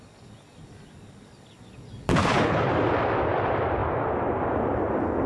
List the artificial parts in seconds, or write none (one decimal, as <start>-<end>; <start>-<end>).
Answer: 2.2-2.7